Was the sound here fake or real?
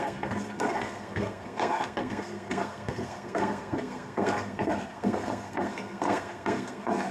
fake